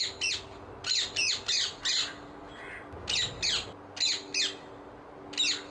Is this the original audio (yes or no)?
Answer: yes